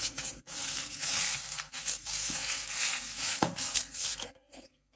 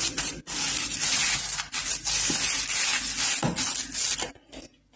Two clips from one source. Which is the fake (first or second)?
first